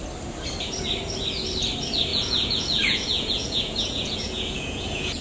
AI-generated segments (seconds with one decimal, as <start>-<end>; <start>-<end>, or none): 2.1-5.2